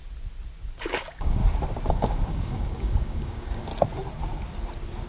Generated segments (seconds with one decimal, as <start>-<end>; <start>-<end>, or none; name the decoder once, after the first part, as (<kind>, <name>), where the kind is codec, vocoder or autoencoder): 0.8-1.4 (codec, DAC); 1.9-3.7